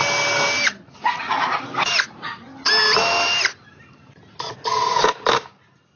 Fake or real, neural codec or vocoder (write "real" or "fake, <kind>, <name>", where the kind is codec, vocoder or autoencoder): real